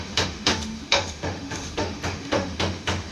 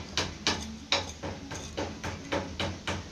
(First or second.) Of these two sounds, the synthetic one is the first